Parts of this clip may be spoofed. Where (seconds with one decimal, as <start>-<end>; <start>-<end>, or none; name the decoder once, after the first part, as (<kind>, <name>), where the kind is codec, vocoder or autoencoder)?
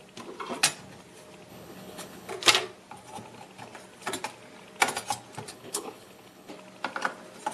1.5-2.3 (codec, HILCodec); 5.5-6.5